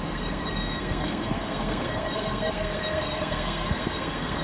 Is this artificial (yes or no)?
yes